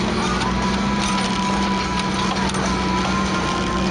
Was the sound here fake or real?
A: real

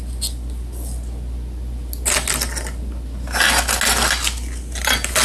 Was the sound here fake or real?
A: real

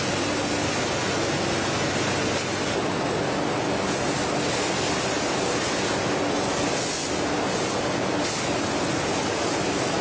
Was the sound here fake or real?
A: real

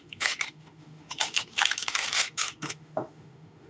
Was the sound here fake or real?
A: fake